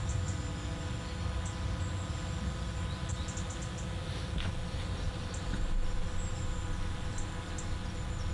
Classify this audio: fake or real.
real